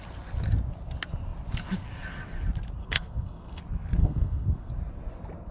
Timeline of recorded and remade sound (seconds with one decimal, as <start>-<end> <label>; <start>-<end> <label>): 0.0-2.8 recorded; 2.8-3.6 remade; 3.6-4.0 recorded; 4.0-4.7 remade; 4.7-5.5 recorded